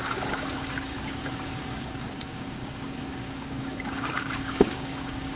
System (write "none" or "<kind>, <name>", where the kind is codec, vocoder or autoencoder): codec, DAC